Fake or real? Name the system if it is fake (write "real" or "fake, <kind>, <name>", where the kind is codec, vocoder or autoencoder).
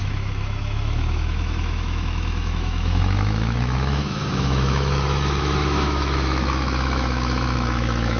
fake, autoencoder, DAC-VAE